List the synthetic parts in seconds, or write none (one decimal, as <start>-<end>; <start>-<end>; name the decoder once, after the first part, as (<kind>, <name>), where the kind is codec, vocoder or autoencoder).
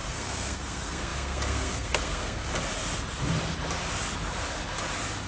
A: 0.0-2.5 (codec, SNAC)